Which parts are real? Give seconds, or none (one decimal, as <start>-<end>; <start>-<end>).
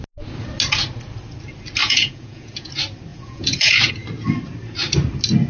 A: 0.0-1.8; 2.7-3.1; 3.9-5.5